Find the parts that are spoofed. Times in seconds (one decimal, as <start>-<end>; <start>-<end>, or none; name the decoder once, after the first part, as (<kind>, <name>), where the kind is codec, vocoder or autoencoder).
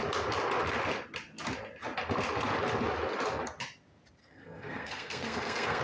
4.2-5.8 (codec, SNAC)